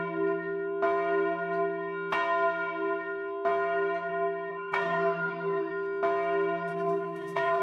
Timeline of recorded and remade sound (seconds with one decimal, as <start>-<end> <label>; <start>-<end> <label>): 0.0-4.5 recorded; 4.5-5.7 remade; 5.7-6.7 recorded; 6.7-7.6 remade